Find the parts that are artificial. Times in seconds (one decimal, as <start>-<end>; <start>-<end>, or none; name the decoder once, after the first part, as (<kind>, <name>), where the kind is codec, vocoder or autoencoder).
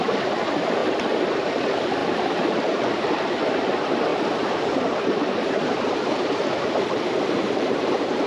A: 2.0-3.2 (vocoder, BigVGAN v2); 4.1-8.3